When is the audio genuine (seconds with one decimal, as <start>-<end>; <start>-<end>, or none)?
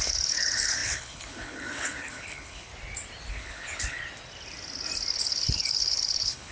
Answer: 2.7-3.3; 4.0-5.1